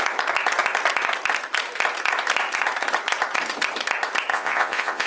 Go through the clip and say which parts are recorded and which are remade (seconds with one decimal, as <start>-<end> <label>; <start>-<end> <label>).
0.0-4.3 recorded; 4.3-5.1 remade

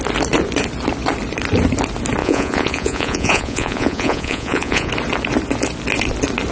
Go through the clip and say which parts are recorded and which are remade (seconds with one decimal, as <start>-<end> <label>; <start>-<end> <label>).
0.0-2.2 recorded; 2.2-4.9 remade; 4.9-6.5 recorded

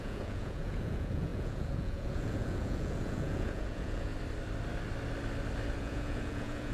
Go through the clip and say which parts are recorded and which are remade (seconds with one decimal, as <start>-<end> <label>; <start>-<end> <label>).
0.0-4.1 remade; 4.1-5.8 recorded; 5.8-6.7 remade